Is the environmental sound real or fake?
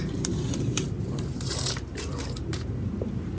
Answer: fake